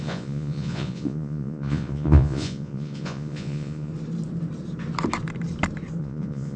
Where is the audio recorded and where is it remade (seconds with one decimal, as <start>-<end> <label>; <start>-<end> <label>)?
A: 0.0-3.9 remade; 3.9-6.0 recorded; 6.0-6.6 remade